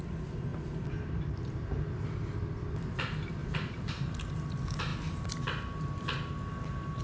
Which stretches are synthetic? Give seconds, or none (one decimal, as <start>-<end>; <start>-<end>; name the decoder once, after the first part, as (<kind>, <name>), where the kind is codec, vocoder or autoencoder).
0.5-1.5 (vocoder, BigVGAN v2); 3.4-4.2